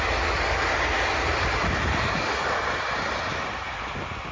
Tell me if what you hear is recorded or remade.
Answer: recorded